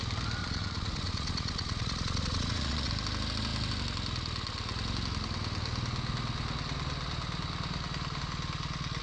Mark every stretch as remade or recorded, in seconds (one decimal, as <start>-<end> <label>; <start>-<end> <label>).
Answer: 0.0-0.4 recorded; 0.4-2.9 remade; 2.9-9.0 recorded

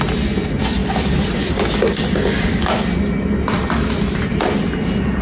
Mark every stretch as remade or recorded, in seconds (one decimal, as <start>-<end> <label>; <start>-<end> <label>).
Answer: 0.0-5.2 recorded

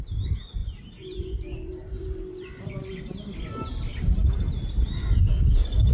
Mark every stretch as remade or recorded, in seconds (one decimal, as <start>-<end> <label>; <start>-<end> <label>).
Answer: 0.0-0.6 recorded; 0.6-2.6 remade; 2.6-5.9 recorded

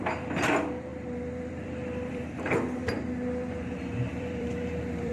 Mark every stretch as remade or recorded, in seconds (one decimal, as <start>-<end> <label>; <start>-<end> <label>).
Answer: 0.0-0.9 recorded; 0.9-2.8 remade; 2.8-4.1 recorded; 4.1-5.1 remade

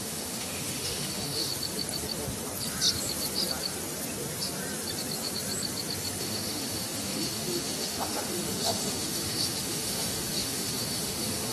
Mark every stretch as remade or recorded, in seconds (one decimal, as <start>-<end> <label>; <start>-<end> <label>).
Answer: 0.0-1.5 remade; 1.5-6.2 recorded; 6.2-11.5 remade

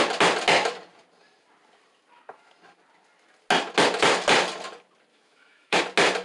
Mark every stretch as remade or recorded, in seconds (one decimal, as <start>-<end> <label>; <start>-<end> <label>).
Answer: 0.0-5.1 recorded; 5.1-5.8 remade; 5.8-6.2 recorded

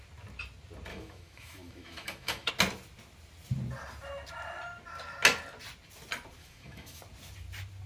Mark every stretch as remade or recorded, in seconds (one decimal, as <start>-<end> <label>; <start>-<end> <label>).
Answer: 0.0-0.9 recorded; 0.9-2.5 remade; 2.5-6.4 recorded; 6.4-7.0 remade; 7.0-7.9 recorded